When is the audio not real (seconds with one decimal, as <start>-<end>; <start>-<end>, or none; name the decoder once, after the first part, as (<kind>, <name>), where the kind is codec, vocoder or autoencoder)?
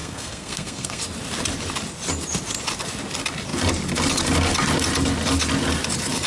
0.0-1.0 (codec, SNAC)